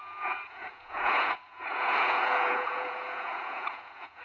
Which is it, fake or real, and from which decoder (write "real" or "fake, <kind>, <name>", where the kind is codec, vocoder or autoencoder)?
fake, vocoder, Vocos